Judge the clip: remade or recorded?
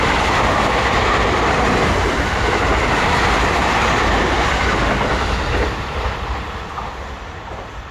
recorded